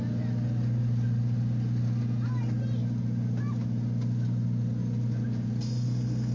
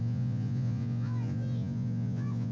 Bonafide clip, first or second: first